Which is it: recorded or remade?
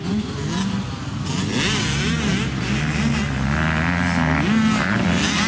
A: recorded